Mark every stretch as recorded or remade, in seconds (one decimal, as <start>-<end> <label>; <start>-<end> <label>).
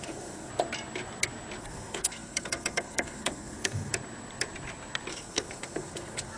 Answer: 0.0-0.5 remade; 0.5-1.6 recorded; 1.6-3.9 remade; 3.9-5.1 recorded; 5.1-6.4 remade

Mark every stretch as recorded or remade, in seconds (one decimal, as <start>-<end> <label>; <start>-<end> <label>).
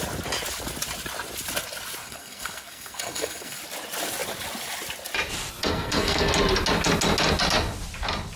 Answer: 0.0-2.0 recorded; 2.0-3.6 remade; 3.6-5.6 recorded; 5.6-6.3 remade; 6.3-8.4 recorded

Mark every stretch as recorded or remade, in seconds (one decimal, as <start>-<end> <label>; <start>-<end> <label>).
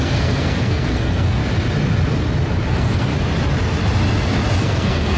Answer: 0.0-1.4 remade; 1.4-2.7 recorded; 2.7-3.1 remade; 3.1-4.6 recorded; 4.6-5.2 remade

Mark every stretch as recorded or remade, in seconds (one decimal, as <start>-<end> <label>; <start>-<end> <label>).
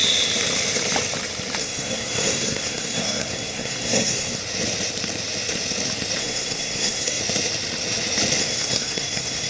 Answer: 0.0-1.6 recorded; 1.6-4.4 remade; 4.4-6.2 recorded; 6.2-7.2 remade; 7.2-8.4 recorded; 8.4-9.5 remade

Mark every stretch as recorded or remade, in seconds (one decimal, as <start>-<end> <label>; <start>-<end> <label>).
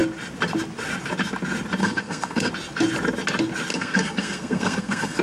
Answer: 0.0-1.8 recorded; 1.8-2.5 remade; 2.5-3.7 recorded; 3.7-5.2 remade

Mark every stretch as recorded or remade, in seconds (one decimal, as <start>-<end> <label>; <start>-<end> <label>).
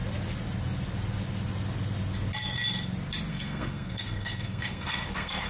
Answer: 0.0-3.3 recorded; 3.3-5.5 remade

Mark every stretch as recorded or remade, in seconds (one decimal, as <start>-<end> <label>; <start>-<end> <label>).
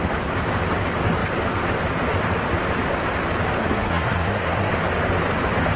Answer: 0.0-3.6 recorded; 3.6-4.7 remade; 4.7-5.8 recorded